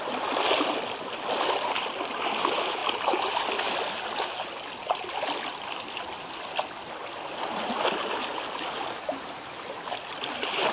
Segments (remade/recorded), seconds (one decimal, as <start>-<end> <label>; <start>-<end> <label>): 0.0-10.7 recorded